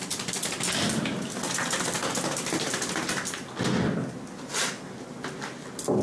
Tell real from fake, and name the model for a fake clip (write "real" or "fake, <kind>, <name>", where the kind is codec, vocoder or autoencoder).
real